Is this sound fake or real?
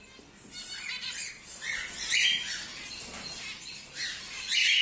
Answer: real